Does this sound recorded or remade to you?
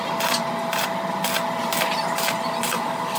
recorded